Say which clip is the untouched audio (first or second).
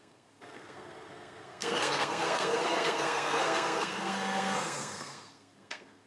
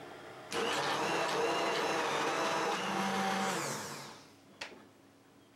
second